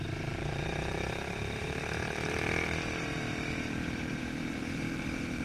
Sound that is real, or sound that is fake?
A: fake